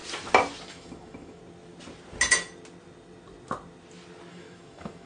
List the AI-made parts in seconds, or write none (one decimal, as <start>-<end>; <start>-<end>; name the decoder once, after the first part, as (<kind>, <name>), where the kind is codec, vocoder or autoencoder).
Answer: 0.7-1.4 (autoencoder, DAC-VAE); 4.3-5.1